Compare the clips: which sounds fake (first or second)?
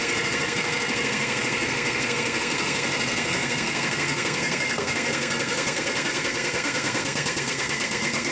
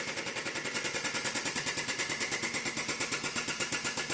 first